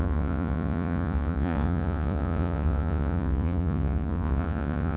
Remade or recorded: remade